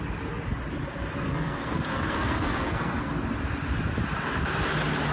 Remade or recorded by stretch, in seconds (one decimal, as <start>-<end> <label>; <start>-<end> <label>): 0.0-1.3 recorded; 1.3-3.1 remade; 3.1-5.1 recorded